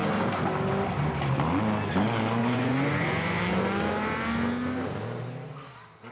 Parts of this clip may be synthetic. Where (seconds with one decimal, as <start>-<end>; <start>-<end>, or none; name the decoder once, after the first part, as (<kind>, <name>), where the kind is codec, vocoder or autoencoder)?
2.4-3.4 (vocoder, Vocos)